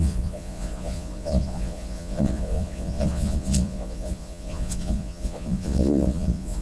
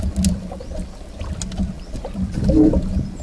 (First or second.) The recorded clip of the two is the second